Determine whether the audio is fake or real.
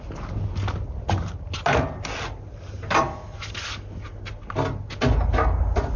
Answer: real